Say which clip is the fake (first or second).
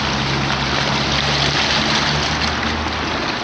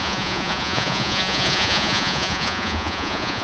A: second